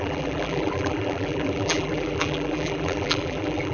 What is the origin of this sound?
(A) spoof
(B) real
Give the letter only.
A